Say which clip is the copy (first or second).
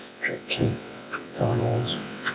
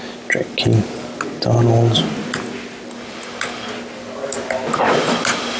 first